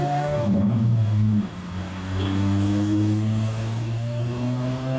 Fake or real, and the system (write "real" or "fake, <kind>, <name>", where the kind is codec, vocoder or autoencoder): fake, codec, DAC